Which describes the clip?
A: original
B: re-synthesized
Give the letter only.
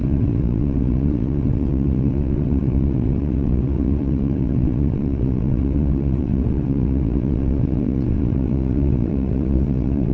B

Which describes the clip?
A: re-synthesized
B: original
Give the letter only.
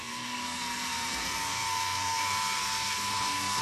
A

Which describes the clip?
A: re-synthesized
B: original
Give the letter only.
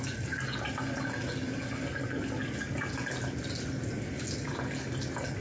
B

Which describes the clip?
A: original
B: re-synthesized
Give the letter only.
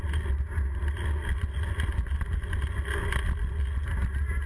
A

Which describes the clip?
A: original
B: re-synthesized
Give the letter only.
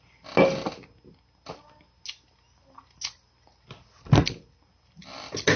A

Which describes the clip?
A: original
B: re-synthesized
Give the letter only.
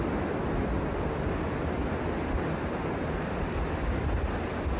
A